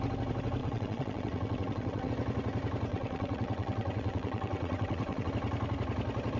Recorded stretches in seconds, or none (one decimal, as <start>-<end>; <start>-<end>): 0.0-0.6; 2.1-2.9; 5.3-6.4